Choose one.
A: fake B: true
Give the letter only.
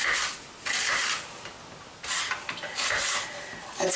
B